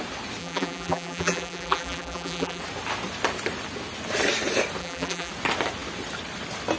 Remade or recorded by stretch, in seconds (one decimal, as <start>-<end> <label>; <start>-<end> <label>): 0.0-0.4 recorded; 0.4-2.6 remade; 2.6-4.8 recorded; 4.8-5.3 remade; 5.3-6.8 recorded